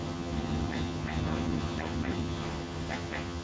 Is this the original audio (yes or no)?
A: no